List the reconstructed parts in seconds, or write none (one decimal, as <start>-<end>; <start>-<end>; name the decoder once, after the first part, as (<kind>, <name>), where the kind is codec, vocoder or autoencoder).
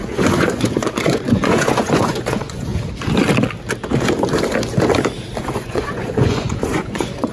0.0-2.7 (vocoder, Vocos); 5.4-7.3